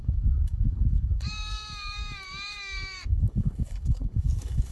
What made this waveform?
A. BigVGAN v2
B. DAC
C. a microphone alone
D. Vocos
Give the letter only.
B